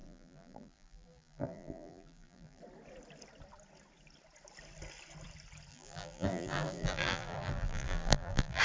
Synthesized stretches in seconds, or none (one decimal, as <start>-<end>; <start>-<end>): 0.0-2.6; 5.7-8.6